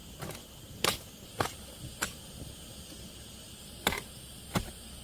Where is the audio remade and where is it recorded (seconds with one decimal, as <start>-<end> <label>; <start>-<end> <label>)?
0.0-5.0 recorded